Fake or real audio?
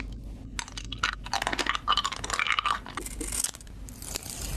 real